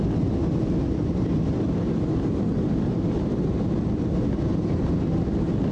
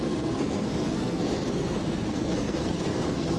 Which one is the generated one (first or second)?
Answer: second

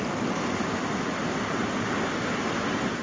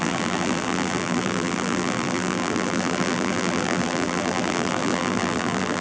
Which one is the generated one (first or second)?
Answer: second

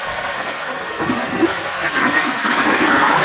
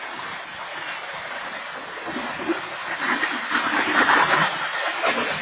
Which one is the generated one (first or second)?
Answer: first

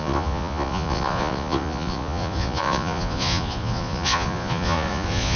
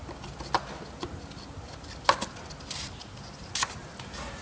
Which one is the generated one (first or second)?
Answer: first